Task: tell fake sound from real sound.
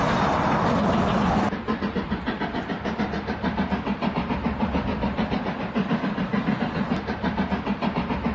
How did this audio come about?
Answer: real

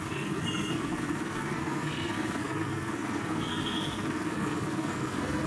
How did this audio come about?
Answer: fake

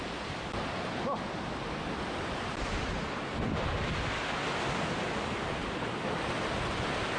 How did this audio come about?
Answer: real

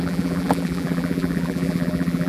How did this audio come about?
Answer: fake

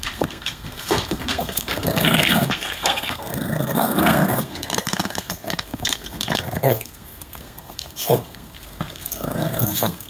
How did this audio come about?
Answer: fake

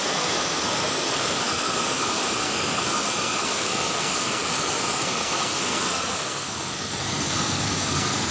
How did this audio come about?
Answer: fake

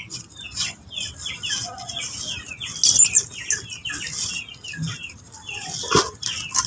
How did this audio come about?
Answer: real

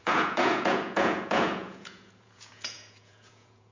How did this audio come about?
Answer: fake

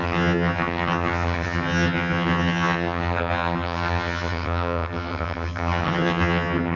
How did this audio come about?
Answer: fake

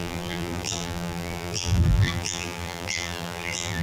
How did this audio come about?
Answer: fake